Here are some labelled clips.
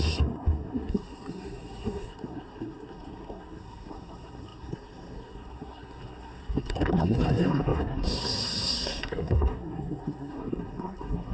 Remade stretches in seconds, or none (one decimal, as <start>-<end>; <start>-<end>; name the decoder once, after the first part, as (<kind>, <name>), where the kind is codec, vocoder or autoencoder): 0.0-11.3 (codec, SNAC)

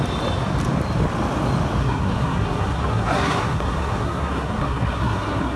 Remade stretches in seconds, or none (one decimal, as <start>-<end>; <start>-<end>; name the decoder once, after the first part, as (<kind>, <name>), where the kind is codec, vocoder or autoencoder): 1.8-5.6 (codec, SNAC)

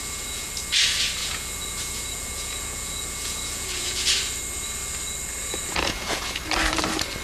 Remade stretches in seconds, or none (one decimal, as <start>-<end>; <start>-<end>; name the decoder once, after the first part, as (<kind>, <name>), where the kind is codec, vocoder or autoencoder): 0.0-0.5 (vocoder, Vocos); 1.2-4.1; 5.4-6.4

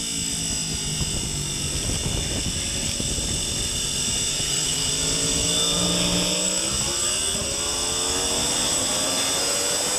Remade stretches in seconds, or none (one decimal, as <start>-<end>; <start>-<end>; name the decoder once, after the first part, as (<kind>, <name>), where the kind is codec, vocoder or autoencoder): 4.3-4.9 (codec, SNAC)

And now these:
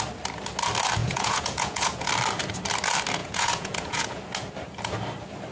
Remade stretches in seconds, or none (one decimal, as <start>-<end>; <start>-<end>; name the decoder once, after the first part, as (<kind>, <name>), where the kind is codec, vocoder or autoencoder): 1.0-2.1 (vocoder, Vocos); 3.2-4.2

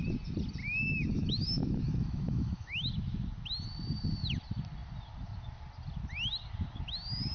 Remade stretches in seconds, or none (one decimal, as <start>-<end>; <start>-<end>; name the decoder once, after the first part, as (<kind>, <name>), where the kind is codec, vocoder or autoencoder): 0.6-2.9 (autoencoder, DAC-VAE)

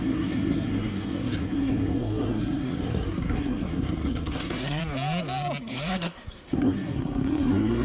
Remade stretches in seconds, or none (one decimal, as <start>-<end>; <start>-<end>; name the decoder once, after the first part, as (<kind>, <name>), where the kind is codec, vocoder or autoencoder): 0.0-4.8 (codec, SNAC); 5.6-7.8

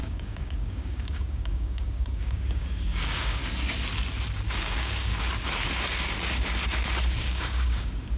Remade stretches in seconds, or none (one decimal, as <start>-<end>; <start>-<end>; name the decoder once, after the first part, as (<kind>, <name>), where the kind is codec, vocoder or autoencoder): 0.0-3.4 (codec, DAC); 4.5-5.1; 7.2-8.2